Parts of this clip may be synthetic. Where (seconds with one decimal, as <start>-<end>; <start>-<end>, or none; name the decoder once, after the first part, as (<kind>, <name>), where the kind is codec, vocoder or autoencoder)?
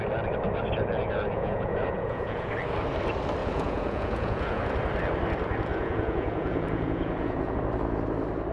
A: 1.3-2.5 (vocoder, Vocos); 3.4-4.6; 5.7-7.6